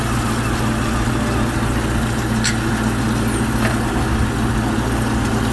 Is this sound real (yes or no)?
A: yes